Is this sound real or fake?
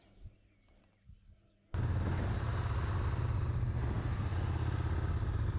real